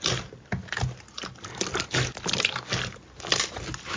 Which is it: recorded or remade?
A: recorded